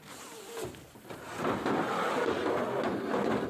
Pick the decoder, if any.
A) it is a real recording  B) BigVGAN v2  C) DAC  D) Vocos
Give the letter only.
A